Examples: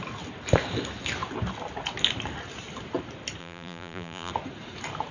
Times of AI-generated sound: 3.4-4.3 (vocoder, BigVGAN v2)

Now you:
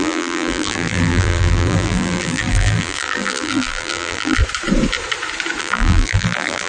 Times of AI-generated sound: 0.0-4.4 (vocoder, BigVGAN v2); 5.6-6.7

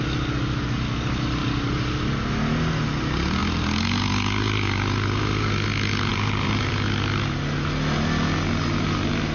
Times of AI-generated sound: 1.4-1.9 (vocoder, BigVGAN v2); 6.1-6.7